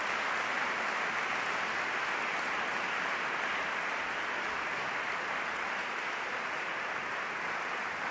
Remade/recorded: recorded